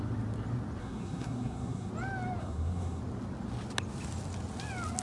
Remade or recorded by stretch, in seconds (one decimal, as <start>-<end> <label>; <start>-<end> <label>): 0.0-0.8 recorded; 0.8-1.9 remade; 1.9-2.4 recorded; 2.4-3.0 remade; 3.0-5.0 recorded